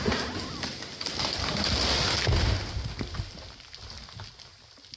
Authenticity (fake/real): real